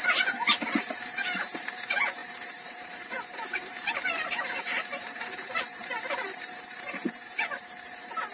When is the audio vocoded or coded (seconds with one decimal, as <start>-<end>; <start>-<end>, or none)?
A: 0.0-8.3

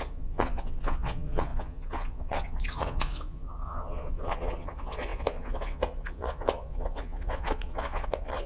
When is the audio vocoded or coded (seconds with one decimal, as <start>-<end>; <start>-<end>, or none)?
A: 0.0-8.5

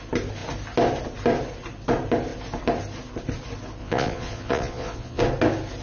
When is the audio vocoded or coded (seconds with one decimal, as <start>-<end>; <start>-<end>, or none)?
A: 3.8-5.2

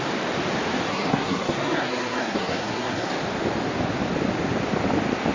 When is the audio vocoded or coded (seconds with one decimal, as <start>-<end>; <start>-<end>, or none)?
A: 0.9-3.1